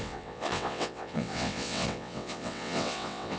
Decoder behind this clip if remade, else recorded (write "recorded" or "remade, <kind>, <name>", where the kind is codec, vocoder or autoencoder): remade, vocoder, WaveNeXt